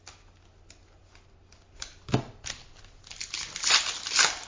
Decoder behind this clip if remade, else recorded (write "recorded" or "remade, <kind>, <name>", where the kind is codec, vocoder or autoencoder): recorded